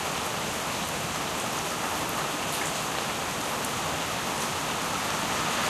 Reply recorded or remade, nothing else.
recorded